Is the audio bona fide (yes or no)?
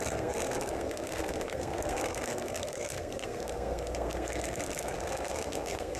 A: no